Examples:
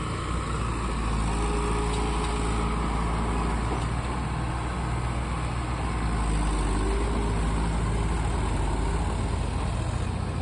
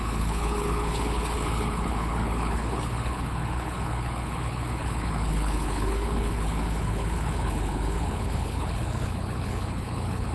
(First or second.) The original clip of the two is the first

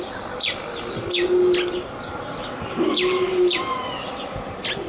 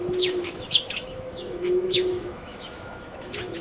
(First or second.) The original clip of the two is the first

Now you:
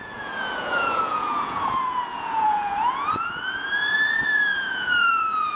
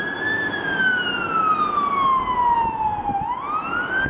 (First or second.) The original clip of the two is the second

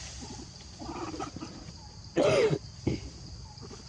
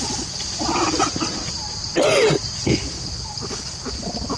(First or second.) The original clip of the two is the second